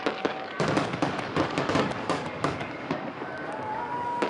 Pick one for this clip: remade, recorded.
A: remade